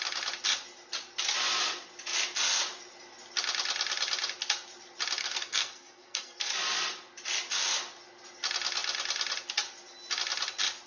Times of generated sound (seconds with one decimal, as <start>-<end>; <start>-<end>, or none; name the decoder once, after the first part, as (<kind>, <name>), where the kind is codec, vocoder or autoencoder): 5.2-6.5 (codec, SNAC)